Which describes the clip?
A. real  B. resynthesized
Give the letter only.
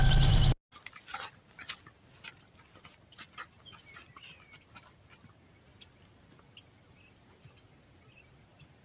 A